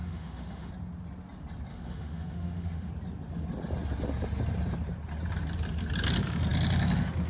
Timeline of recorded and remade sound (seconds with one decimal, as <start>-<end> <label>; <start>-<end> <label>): 0.0-0.7 remade; 0.7-1.7 recorded; 1.7-2.9 remade; 2.9-7.3 recorded